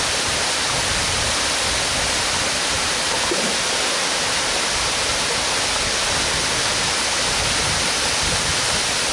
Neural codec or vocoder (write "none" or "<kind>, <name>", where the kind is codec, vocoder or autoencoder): none